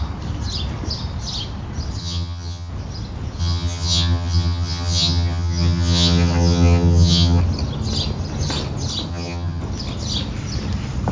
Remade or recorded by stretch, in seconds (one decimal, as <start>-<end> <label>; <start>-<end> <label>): 0.0-2.0 recorded; 2.0-2.7 remade; 2.7-3.4 recorded; 3.4-7.4 remade; 7.4-9.1 recorded; 9.1-9.6 remade; 9.6-11.1 recorded

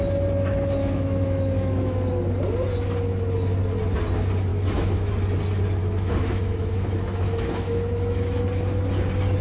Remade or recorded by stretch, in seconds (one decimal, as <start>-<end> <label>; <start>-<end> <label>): 0.0-0.8 recorded; 0.8-2.1 remade; 2.1-4.5 recorded; 4.5-5.1 remade; 5.1-5.8 recorded; 5.8-8.4 remade; 8.4-9.4 recorded

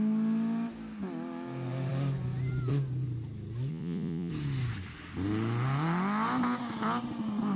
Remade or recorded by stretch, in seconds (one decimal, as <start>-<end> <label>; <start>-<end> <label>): 0.0-3.7 recorded; 3.7-4.3 remade; 4.3-7.6 recorded

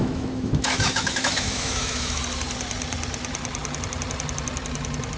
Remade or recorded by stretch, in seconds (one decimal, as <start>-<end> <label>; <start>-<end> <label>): 0.0-2.2 remade; 2.2-5.2 recorded

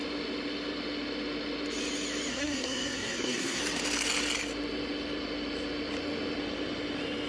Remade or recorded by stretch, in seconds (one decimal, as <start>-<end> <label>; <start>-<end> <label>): 0.0-2.3 recorded; 2.3-3.6 remade; 3.6-7.3 recorded

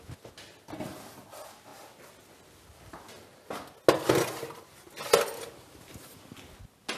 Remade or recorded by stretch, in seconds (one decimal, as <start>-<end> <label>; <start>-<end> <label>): 0.0-7.0 recorded

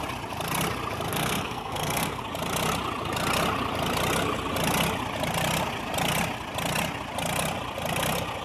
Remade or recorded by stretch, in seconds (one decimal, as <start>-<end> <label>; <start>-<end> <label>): 0.0-1.1 recorded; 1.1-2.2 remade; 2.2-8.4 recorded